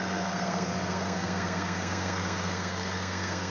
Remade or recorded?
remade